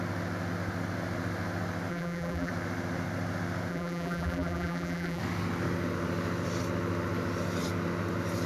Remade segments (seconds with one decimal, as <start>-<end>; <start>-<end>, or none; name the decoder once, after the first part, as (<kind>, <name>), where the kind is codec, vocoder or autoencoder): 1.9-2.5 (vocoder, BigVGAN v2); 3.7-5.2